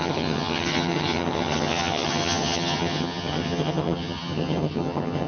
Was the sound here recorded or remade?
remade